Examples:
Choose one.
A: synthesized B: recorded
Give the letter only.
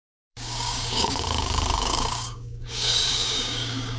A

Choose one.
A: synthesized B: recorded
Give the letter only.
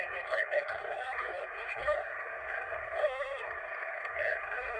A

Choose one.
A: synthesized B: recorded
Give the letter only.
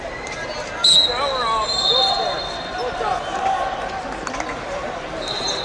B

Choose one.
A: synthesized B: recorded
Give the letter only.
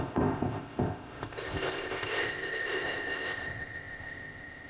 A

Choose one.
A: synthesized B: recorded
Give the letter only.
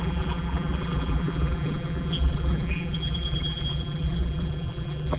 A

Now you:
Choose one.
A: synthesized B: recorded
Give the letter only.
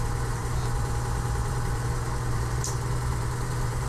A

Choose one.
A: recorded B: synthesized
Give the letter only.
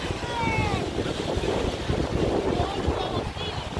A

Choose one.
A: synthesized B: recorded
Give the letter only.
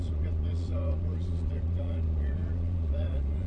A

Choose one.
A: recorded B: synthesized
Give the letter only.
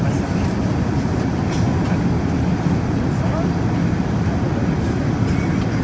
A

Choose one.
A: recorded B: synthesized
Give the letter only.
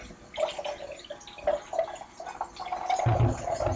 A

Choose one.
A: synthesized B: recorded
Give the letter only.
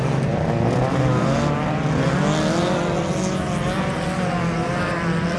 B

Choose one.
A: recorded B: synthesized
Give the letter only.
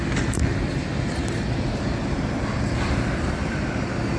A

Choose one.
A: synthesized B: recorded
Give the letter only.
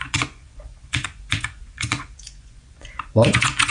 A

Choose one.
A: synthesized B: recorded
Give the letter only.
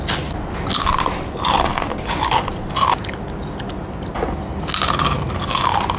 B